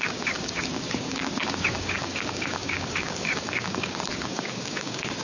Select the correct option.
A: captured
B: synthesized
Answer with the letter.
B